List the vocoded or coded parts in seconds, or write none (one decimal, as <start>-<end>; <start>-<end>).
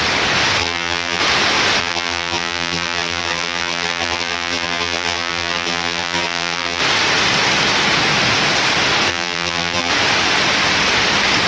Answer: 0.6-1.2; 1.8-6.8; 9.1-9.9